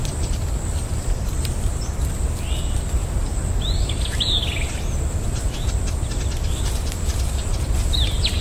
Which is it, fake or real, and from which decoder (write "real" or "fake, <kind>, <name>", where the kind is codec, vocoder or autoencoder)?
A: fake, vocoder, BigVGAN v2